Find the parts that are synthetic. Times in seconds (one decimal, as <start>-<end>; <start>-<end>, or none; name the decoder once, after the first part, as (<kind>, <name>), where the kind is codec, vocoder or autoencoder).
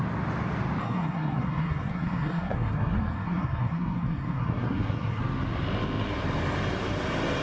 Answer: 0.8-5.2 (codec, SNAC)